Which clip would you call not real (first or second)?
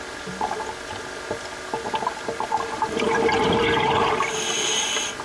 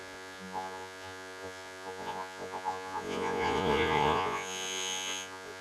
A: second